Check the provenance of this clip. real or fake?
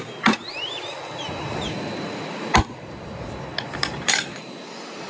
real